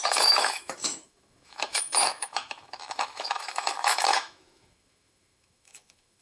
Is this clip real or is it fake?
fake